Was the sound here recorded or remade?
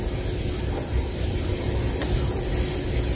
recorded